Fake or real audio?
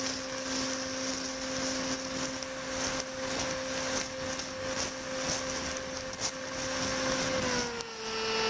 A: real